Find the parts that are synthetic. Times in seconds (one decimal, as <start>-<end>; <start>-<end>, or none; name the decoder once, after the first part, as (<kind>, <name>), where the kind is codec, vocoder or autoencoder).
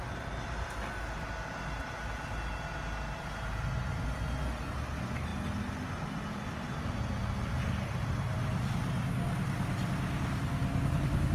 none